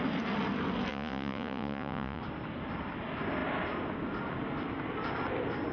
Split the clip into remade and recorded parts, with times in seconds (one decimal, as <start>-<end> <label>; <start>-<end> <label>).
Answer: 0.0-0.9 recorded; 0.9-2.2 remade; 2.2-5.7 recorded